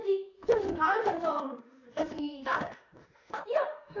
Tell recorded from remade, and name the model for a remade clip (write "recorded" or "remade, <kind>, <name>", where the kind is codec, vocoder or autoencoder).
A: remade, autoencoder, DAC-VAE